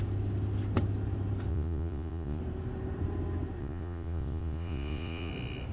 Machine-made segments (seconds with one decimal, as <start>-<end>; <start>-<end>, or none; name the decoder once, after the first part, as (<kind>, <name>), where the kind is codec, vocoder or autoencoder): 1.5-2.4 (vocoder, Vocos); 3.6-5.3